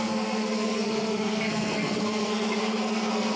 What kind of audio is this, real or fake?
fake